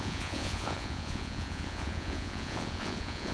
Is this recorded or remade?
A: remade